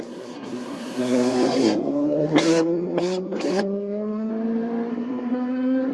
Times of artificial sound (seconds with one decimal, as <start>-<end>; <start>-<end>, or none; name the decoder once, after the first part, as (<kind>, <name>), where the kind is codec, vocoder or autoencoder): 0.0-4.3 (codec, SNAC); 4.9-5.9